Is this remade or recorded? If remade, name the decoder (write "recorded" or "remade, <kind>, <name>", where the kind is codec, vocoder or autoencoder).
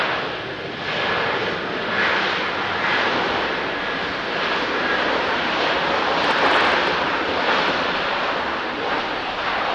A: recorded